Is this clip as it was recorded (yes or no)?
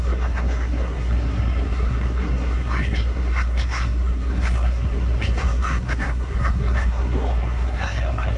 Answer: no